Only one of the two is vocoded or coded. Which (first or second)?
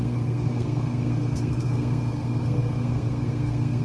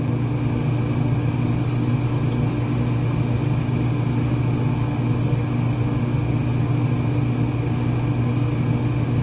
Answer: first